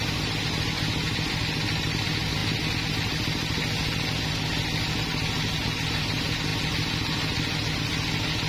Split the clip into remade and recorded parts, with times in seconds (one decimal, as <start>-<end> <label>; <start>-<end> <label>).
0.0-8.5 recorded